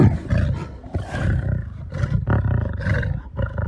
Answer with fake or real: real